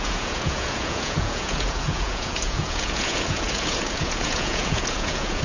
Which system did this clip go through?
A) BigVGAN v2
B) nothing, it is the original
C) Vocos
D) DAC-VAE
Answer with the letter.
C